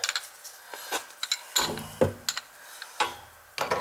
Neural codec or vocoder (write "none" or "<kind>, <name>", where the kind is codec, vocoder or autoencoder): none